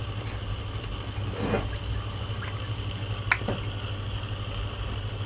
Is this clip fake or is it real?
real